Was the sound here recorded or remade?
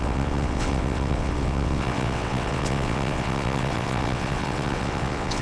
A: remade